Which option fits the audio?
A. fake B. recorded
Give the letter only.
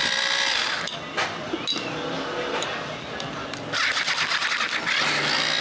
B